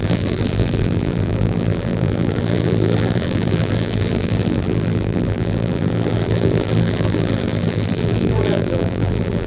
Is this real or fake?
fake